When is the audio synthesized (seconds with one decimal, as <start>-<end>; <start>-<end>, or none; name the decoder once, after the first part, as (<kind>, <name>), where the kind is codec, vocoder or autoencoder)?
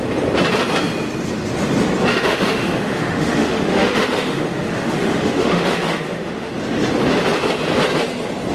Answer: 2.1-6.5 (autoencoder, DAC-VAE)